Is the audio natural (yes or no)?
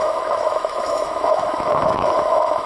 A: no